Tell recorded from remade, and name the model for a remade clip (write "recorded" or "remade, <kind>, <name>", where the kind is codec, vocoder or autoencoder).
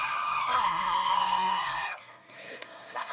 remade, codec, SNAC